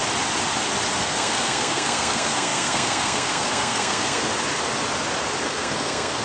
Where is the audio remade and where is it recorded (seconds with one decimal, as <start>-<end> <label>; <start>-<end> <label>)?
0.0-1.0 recorded; 1.0-4.3 remade; 4.3-5.4 recorded; 5.4-6.2 remade